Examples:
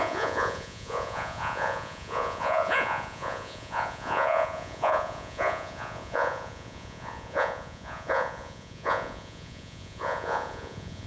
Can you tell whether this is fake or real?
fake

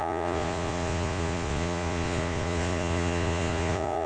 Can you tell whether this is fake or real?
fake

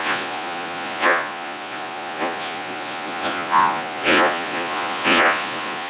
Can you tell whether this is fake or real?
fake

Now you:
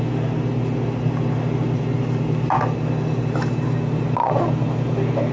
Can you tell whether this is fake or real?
real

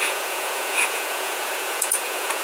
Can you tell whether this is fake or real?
fake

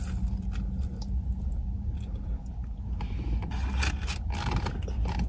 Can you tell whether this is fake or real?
real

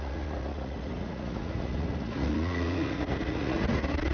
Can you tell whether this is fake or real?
fake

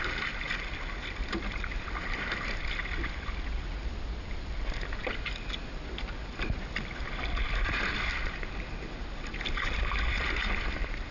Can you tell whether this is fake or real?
real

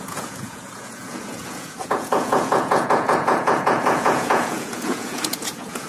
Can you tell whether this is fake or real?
fake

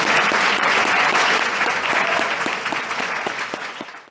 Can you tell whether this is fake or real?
fake